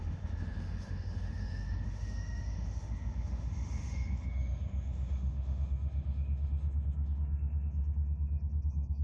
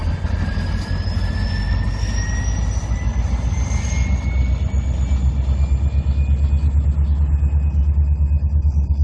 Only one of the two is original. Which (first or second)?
second